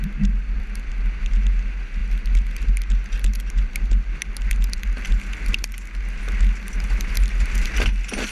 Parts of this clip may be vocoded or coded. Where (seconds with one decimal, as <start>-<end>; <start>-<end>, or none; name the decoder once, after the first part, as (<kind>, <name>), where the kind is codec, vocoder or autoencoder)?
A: none